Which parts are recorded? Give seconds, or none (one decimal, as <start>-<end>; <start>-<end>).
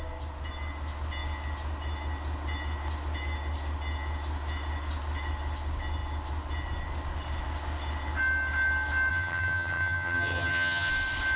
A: 0.0-9.1; 10.9-11.4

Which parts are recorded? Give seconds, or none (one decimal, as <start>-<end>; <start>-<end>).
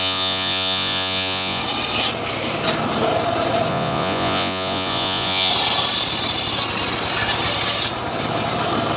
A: 1.6-3.7; 5.5-9.0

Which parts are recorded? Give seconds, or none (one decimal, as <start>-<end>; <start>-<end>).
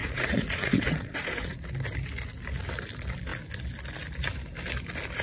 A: 1.7-5.2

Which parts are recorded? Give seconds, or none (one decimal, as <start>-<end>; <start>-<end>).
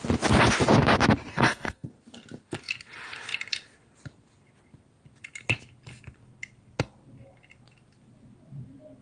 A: 0.0-1.3; 1.9-9.0